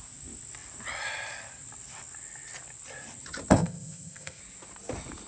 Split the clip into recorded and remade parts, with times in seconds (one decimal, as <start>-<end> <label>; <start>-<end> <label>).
0.0-3.5 recorded; 3.5-4.4 remade; 4.4-5.3 recorded